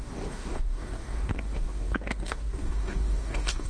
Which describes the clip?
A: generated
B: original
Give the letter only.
A